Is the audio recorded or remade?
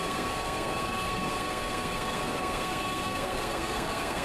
remade